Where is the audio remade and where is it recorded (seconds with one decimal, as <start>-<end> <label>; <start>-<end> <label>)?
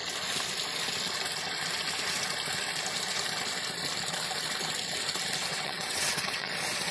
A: 0.0-5.5 recorded; 5.5-6.5 remade; 6.5-6.9 recorded